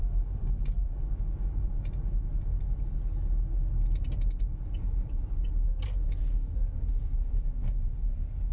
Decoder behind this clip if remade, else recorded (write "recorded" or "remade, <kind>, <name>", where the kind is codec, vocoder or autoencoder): recorded